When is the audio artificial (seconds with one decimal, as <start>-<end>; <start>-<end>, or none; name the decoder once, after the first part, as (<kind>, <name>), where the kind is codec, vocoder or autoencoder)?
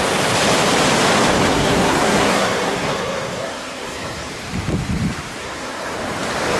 1.5-4.3 (codec, SNAC); 5.4-5.9